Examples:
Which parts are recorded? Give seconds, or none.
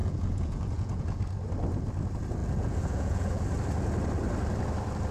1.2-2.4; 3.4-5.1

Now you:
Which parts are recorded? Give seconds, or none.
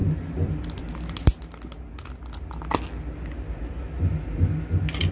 0.0-5.1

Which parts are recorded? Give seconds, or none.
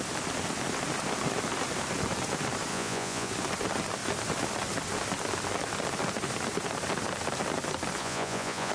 0.0-2.7; 3.3-8.0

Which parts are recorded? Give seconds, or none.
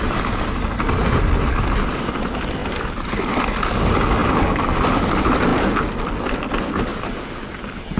0.0-8.0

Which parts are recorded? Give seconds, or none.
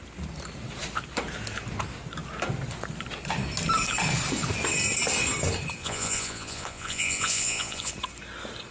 0.0-5.8; 7.9-8.7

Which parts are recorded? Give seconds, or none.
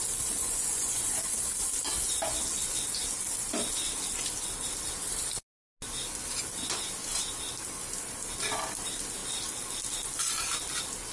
0.0-0.4; 1.2-11.1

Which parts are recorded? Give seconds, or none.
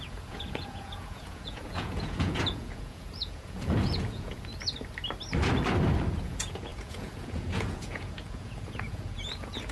4.5-6.2